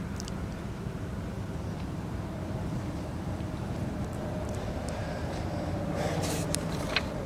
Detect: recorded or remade remade